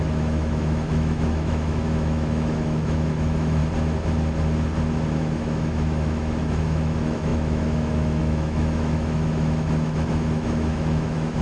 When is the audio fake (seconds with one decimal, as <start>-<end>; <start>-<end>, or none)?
0.0-3.6; 5.2-11.4

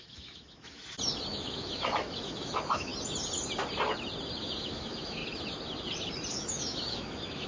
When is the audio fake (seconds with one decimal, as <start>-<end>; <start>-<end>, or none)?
0.0-0.8; 1.3-2.9; 4.4-5.2; 6.3-7.5

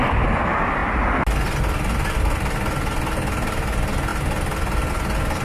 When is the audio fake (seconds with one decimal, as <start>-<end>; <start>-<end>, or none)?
none

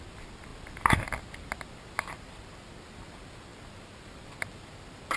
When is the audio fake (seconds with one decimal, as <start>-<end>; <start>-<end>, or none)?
none

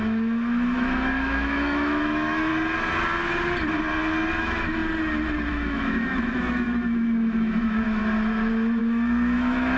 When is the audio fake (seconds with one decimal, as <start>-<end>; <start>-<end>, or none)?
0.0-2.5; 4.3-4.8; 5.5-8.0; 8.8-9.8

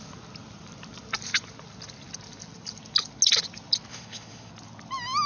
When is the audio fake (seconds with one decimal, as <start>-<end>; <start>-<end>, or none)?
3.9-4.5

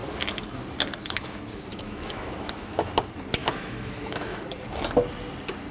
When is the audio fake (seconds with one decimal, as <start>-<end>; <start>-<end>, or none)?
1.7-2.9; 3.4-4.4